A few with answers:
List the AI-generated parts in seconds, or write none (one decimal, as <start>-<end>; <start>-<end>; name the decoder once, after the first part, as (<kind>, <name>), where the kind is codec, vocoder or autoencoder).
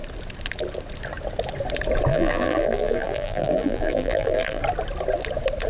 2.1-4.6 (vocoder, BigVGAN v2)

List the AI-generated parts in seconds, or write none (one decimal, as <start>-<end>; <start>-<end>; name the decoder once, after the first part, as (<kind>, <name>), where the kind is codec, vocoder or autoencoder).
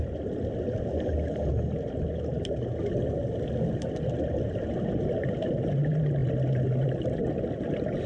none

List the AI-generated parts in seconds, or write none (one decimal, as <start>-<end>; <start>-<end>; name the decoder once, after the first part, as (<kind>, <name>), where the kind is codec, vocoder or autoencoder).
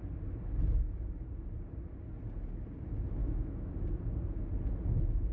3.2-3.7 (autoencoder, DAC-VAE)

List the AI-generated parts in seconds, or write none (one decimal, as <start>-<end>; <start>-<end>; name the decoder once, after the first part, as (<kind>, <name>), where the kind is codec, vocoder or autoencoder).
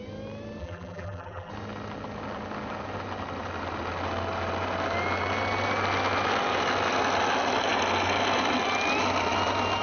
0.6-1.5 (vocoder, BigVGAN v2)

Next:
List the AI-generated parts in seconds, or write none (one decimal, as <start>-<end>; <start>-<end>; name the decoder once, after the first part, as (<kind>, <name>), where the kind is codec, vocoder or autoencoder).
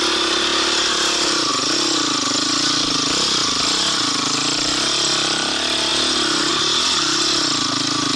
none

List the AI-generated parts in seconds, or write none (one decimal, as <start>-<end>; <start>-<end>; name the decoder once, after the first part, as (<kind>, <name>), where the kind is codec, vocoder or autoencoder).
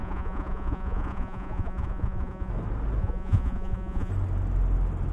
0.0-2.5 (vocoder, Vocos); 3.0-4.1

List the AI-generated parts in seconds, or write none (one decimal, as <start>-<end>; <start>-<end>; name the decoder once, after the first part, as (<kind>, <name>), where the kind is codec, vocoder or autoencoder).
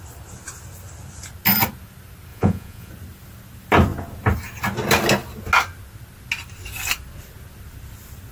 2.3-2.9 (vocoder, Vocos)